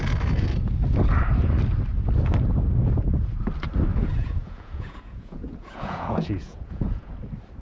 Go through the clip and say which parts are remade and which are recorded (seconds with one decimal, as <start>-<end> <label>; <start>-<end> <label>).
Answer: 0.0-3.9 recorded; 3.9-7.1 remade; 7.1-7.6 recorded